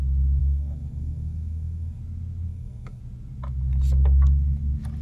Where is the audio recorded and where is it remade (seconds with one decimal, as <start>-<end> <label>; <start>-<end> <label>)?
0.0-0.4 recorded; 0.4-2.0 remade; 2.0-2.5 recorded; 2.5-3.0 remade; 3.0-5.0 recorded